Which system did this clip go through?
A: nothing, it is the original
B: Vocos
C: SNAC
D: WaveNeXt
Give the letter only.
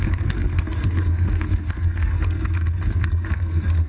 C